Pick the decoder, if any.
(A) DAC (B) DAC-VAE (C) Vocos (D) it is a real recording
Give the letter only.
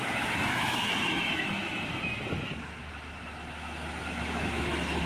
B